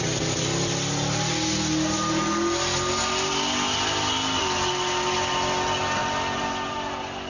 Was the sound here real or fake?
real